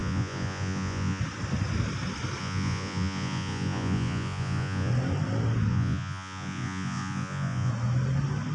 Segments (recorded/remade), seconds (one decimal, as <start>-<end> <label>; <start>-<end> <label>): 0.0-1.2 remade; 1.2-2.4 recorded; 2.4-4.9 remade; 4.9-5.7 recorded; 5.7-7.7 remade; 7.7-8.5 recorded